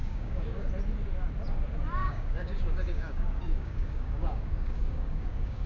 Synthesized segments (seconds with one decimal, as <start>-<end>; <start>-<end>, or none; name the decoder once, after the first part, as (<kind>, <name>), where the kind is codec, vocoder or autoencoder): 0.0-0.7 (codec, DAC); 2.0-5.7